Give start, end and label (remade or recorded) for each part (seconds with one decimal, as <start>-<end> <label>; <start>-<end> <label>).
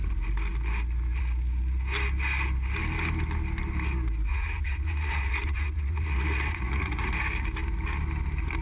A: 0.0-4.3 recorded; 4.3-7.1 remade; 7.1-8.6 recorded